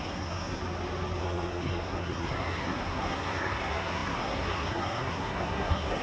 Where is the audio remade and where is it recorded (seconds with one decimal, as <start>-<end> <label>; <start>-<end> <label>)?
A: 0.0-0.6 remade; 0.6-1.2 recorded; 1.2-6.0 remade